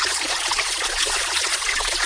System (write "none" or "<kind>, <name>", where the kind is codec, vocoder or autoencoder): vocoder, Vocos